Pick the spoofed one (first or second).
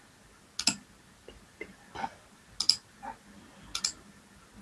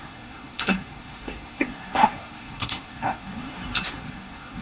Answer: second